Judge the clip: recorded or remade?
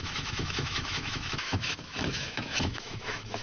remade